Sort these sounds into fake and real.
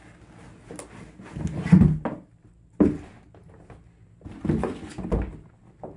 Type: real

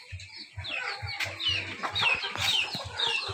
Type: real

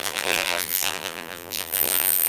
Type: fake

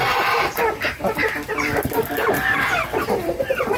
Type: fake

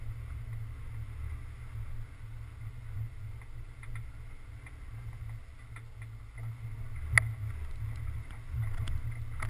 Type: real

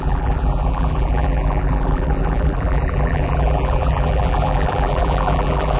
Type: fake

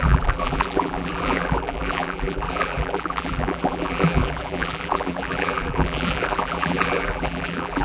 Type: fake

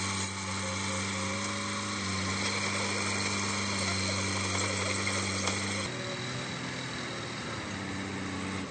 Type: real